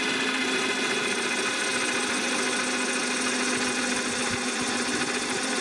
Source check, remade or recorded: recorded